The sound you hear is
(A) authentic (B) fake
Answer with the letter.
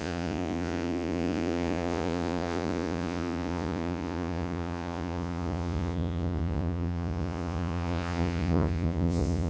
B